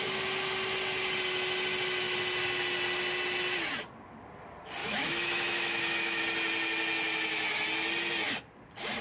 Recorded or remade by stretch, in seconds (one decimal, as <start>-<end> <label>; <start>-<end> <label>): 0.0-4.8 recorded; 4.8-6.2 remade; 6.2-9.0 recorded